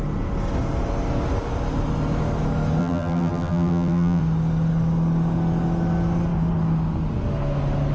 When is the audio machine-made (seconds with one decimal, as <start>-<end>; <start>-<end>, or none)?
2.8-4.2